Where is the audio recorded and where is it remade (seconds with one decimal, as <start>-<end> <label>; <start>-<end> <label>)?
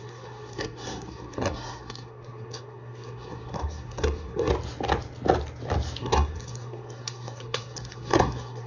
0.0-4.5 remade; 4.5-6.0 recorded; 6.0-8.7 remade